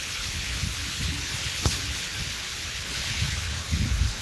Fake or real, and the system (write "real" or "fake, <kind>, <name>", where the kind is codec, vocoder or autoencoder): fake, codec, HILCodec